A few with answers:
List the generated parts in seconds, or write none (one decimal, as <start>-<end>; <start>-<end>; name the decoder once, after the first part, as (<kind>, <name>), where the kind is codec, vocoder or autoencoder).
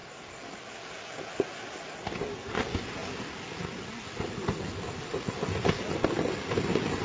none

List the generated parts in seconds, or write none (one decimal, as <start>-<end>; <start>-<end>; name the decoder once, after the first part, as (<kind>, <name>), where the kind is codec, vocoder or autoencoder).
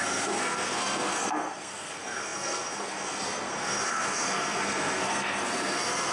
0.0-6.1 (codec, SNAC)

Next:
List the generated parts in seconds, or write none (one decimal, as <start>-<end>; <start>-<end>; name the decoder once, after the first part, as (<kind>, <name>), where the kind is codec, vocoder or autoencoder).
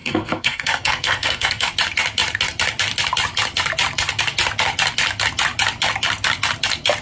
0.0-1.7 (codec, SNAC)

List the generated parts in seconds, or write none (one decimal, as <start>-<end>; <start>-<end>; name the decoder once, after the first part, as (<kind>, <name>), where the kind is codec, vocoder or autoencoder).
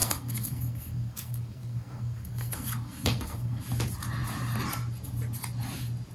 0.0-3.6 (codec, SNAC)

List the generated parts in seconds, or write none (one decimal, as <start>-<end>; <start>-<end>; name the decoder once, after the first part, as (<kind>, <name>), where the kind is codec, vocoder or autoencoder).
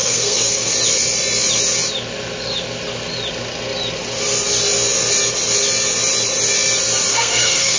0.0-0.7 (codec, SNAC); 7.1-7.8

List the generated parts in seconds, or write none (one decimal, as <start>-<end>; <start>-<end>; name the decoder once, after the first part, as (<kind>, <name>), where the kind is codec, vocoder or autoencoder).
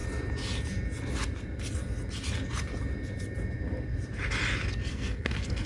4.9-5.7 (codec, SNAC)